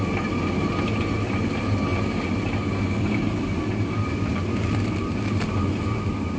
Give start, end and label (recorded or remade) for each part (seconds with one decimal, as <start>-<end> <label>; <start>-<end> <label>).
0.0-6.4 recorded